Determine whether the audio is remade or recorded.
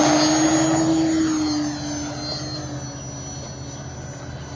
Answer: recorded